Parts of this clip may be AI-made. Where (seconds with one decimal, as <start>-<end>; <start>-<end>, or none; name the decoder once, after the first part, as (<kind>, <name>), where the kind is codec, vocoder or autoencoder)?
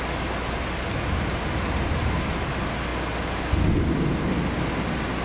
none